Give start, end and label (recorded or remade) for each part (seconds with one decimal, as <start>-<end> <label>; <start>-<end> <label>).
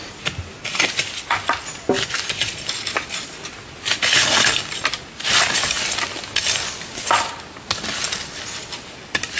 0.0-9.4 recorded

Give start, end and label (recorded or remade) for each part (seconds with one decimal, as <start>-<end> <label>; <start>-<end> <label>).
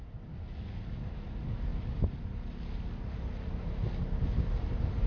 0.0-5.1 recorded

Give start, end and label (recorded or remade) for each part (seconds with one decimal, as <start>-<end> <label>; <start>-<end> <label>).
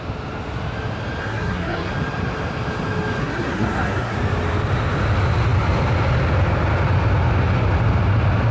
0.0-1.2 recorded; 1.2-1.9 remade; 1.9-3.2 recorded; 3.2-4.2 remade; 4.2-8.5 recorded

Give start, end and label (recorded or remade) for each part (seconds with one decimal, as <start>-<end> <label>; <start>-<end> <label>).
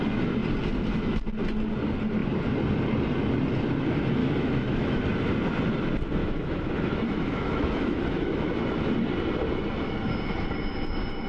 0.0-4.2 recorded; 4.2-5.0 remade; 5.0-6.2 recorded; 6.2-8.5 remade; 8.5-11.3 recorded